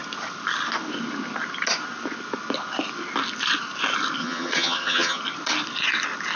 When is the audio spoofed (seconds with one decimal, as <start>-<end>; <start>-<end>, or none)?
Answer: 4.2-5.2